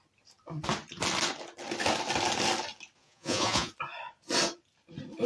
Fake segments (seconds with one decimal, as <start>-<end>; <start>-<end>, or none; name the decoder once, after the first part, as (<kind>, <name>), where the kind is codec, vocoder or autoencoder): 3.0-3.7 (vocoder, Vocos)